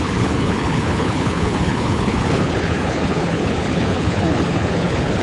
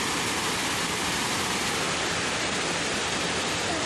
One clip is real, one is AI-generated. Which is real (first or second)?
second